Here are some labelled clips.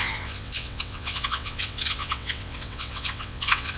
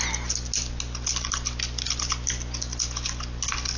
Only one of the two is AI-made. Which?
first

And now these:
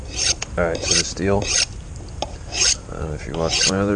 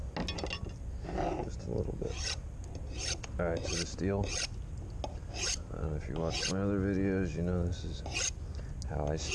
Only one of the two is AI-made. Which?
first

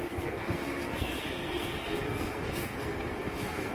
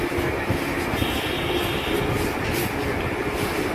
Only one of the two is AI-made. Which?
first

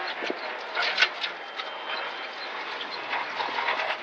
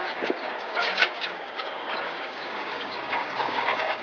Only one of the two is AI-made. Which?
second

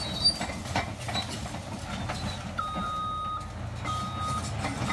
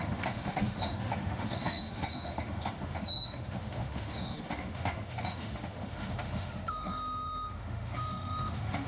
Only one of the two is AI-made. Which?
second